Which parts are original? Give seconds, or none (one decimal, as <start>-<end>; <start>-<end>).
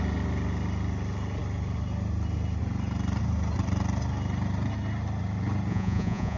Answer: 0.0-5.7